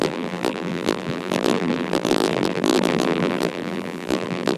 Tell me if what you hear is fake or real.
fake